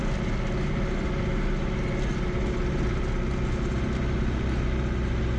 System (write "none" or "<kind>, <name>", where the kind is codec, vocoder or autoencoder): none